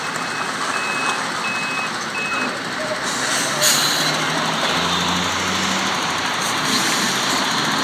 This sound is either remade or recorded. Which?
recorded